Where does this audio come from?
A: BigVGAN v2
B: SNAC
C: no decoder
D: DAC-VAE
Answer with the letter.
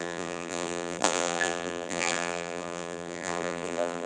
A